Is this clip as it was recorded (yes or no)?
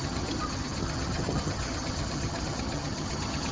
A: no